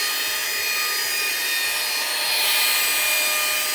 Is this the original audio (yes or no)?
yes